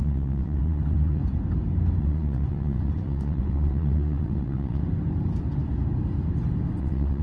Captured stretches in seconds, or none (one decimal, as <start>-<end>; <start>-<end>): 1.2-2.0; 4.8-6.8